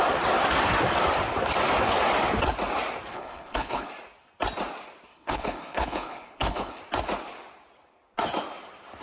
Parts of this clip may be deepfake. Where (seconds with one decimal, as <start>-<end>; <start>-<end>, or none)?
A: 3.1-3.9; 5.1-6.8